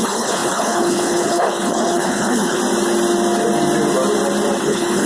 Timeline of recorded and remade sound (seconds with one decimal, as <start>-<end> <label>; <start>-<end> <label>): 0.0-2.6 remade; 2.6-4.6 recorded; 4.6-5.1 remade